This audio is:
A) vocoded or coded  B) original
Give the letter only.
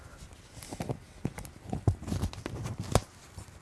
B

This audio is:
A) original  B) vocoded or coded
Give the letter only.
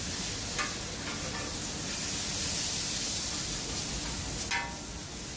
A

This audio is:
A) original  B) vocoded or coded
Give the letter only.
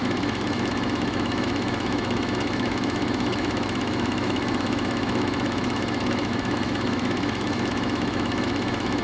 B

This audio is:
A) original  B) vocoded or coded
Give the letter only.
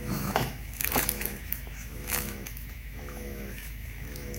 B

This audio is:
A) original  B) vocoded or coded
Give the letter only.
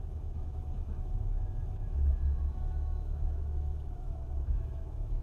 B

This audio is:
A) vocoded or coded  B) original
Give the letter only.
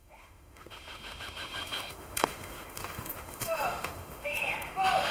A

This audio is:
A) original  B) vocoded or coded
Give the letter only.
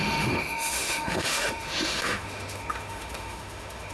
B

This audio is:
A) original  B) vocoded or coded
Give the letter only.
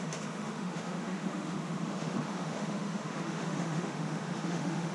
B